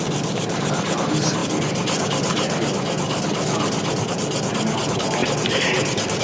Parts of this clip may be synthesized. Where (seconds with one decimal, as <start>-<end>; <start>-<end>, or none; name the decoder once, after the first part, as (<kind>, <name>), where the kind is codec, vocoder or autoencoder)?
none

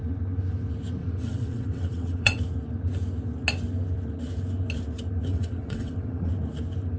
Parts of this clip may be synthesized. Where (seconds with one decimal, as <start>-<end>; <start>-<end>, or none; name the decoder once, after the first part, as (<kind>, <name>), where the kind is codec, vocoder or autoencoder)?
1.0-2.4 (vocoder, WaveNeXt); 5.3-6.3

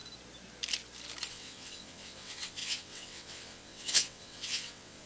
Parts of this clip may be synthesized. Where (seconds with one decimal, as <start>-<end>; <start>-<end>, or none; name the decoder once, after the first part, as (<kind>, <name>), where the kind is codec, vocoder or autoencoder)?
1.3-5.1 (vocoder, WaveNeXt)

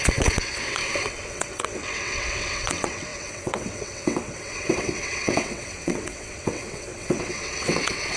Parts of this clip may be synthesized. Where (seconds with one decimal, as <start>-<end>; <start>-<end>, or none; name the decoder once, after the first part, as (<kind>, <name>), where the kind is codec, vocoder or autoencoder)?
0.0-8.2 (vocoder, WaveNeXt)